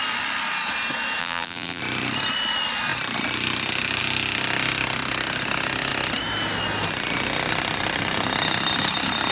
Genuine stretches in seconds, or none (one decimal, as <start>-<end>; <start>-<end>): 0.0-1.2; 1.8-9.3